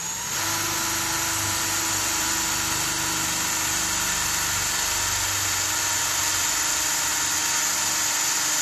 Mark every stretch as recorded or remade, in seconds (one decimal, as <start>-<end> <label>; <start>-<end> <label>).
0.0-8.6 recorded